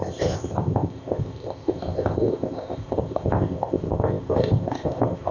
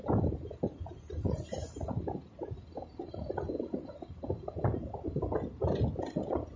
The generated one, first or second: first